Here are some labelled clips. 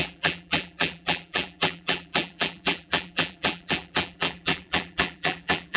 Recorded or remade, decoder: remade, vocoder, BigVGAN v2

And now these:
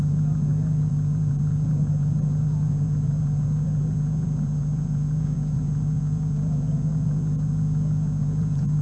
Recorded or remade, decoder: remade, vocoder, Vocos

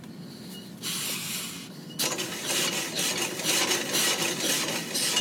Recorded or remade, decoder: recorded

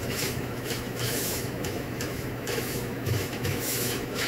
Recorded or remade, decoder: remade, autoencoder, DAC-VAE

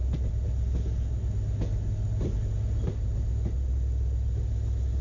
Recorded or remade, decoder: recorded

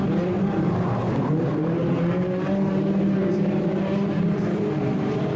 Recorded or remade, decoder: remade, vocoder, BigVGAN v2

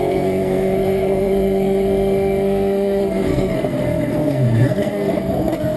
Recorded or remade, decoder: remade, codec, SNAC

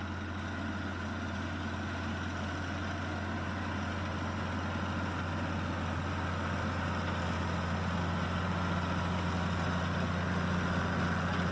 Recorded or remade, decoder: recorded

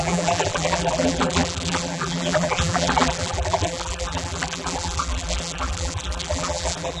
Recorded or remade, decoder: remade, vocoder, BigVGAN v2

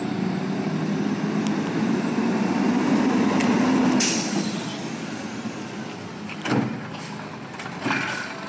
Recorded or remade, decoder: recorded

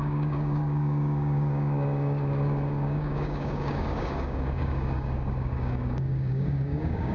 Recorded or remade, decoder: remade, codec, DAC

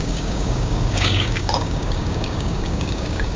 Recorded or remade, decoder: remade, codec, DAC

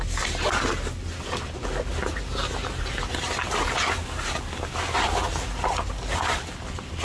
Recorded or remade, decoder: recorded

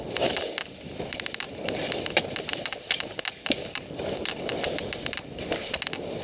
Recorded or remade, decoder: recorded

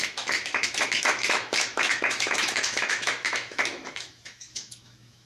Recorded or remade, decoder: remade, autoencoder, DAC-VAE